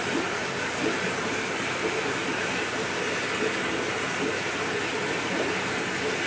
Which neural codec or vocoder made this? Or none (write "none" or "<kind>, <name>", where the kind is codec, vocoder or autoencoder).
none